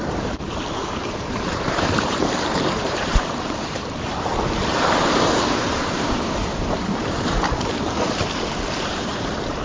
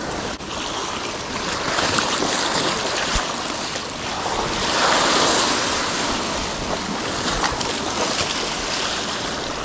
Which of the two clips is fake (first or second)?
first